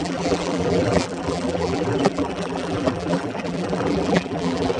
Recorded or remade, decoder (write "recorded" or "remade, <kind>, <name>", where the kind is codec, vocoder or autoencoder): remade, vocoder, BigVGAN v2